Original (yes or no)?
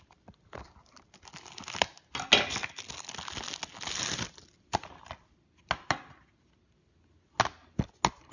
yes